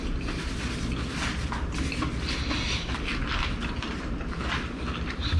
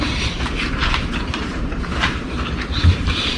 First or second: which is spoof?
second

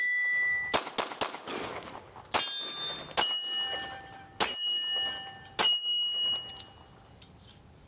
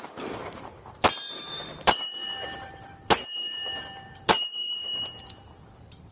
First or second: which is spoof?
second